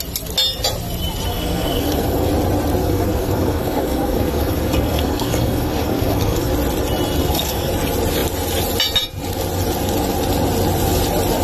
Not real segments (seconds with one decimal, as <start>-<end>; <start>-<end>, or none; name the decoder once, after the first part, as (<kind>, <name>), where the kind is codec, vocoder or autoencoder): 1.3-2.3 (codec, SNAC); 2.8-6.5; 7.2-7.7